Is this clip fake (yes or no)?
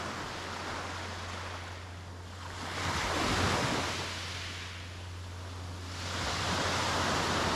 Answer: no